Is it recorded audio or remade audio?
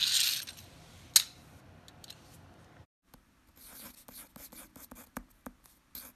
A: recorded